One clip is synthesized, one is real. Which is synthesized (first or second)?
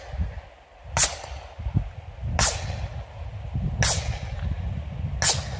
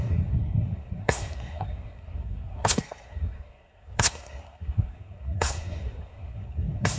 second